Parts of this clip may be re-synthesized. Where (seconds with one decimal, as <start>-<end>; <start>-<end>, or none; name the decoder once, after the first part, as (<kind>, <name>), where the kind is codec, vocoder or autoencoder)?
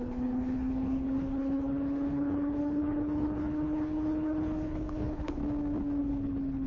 0.0-5.4 (codec, HILCodec); 6.0-6.7